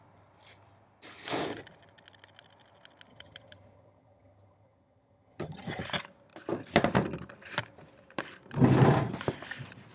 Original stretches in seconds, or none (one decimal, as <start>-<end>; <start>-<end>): 0.0-3.1; 5.8-9.9

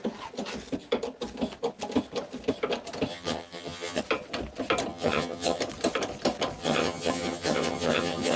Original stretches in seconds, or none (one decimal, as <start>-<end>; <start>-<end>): 0.0-3.1; 4.0-4.9; 5.6-6.6

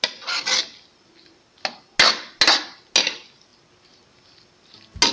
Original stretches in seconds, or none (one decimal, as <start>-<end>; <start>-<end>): 0.0-5.1

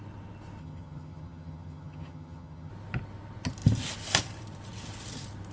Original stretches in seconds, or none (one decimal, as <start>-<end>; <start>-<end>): 0.0-0.6; 2.7-5.5

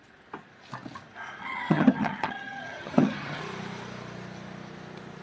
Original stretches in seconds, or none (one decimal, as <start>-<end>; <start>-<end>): 0.0-1.4; 3.4-5.2

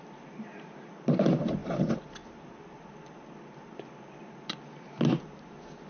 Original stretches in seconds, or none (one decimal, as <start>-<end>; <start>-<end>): 0.0-5.9

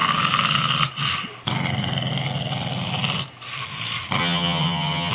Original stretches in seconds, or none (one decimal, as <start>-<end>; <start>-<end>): 0.0-4.2

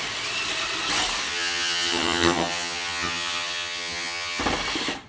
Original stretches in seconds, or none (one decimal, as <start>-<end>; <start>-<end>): 0.0-1.3; 4.4-5.1